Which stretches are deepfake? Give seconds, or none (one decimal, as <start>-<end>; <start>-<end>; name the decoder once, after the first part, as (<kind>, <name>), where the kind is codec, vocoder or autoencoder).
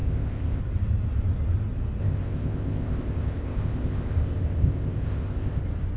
0.0-0.6 (codec, ZipCodec); 2.0-5.6